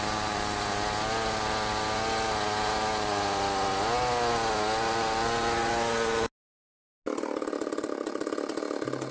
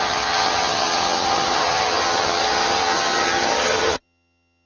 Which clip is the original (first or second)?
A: first